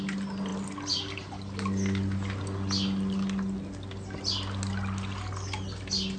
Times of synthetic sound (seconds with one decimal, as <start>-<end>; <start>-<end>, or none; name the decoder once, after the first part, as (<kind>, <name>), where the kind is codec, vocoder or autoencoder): none

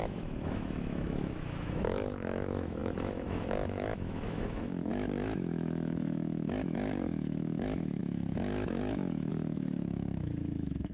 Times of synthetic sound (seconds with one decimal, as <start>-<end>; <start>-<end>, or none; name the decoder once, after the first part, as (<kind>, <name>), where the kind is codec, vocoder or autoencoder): 0.0-10.9 (autoencoder, DAC-VAE)

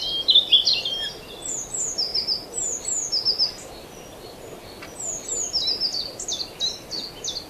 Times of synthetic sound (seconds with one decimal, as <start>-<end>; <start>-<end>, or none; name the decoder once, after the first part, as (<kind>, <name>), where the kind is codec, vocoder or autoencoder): none

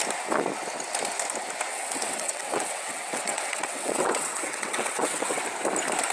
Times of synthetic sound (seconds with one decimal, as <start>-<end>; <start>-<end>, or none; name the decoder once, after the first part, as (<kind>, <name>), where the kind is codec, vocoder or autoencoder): 1.7-5.4 (vocoder, WaveNeXt)

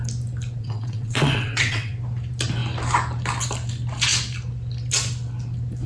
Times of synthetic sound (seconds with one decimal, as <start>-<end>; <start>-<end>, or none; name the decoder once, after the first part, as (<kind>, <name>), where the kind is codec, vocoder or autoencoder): 0.6-1.9 (vocoder, WaveNeXt)

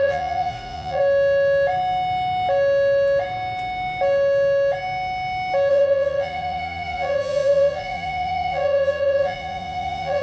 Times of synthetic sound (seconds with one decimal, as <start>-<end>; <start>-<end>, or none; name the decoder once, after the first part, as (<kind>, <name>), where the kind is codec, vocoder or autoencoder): 0.0-1.0 (vocoder, Vocos); 5.7-10.2